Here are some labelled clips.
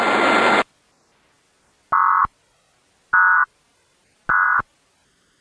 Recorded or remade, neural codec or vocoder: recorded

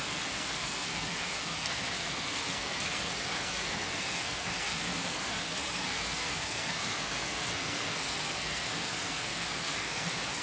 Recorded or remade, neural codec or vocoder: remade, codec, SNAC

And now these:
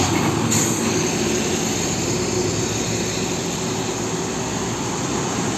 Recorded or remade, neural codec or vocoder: recorded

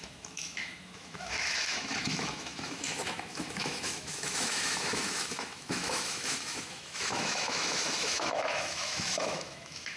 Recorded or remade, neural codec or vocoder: remade, autoencoder, DAC-VAE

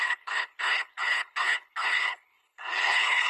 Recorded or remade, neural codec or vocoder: remade, codec, HILCodec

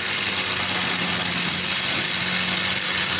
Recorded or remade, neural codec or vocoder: recorded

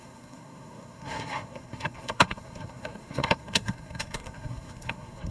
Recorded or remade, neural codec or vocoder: remade, codec, SNAC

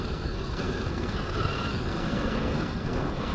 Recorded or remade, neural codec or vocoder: remade, codec, SNAC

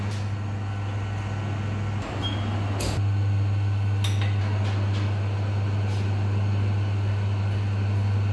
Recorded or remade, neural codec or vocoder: recorded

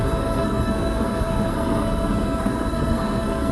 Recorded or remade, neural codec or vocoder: remade, codec, SNAC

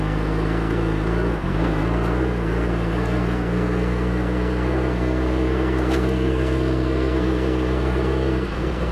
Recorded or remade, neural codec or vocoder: remade, codec, SNAC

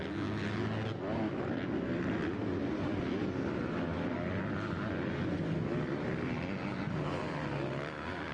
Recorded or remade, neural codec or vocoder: recorded